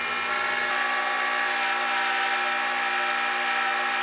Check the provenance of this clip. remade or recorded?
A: recorded